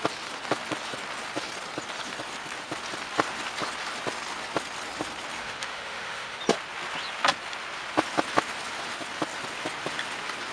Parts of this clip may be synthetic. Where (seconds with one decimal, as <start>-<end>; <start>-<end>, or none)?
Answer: 5.4-6.4